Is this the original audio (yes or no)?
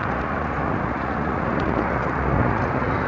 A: no